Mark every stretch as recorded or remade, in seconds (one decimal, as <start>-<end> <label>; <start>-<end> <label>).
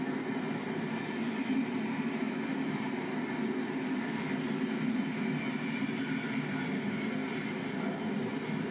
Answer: 0.0-8.7 recorded